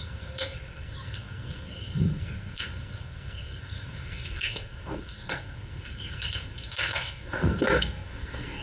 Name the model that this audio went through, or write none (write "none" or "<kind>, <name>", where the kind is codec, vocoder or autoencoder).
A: codec, SNAC